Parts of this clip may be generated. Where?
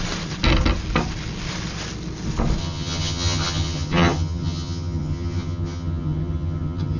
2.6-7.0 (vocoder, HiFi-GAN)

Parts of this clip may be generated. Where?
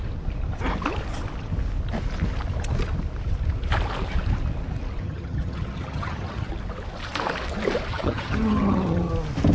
5.0-6.5 (vocoder, HiFi-GAN); 7.9-9.1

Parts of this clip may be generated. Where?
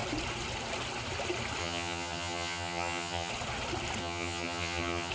1.6-3.3 (vocoder, HiFi-GAN); 4.0-5.1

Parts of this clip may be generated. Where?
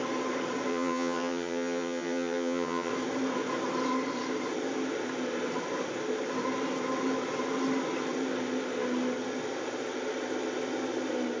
0.7-2.9 (vocoder, HiFi-GAN)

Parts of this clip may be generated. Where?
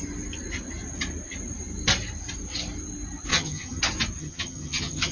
3.3-3.8 (vocoder, HiFi-GAN); 4.2-5.1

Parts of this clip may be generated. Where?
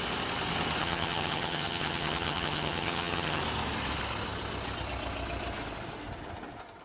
0.8-3.4 (vocoder, HiFi-GAN)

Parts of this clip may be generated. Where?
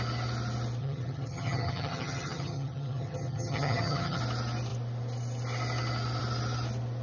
0.8-4.2 (vocoder, HiFi-GAN)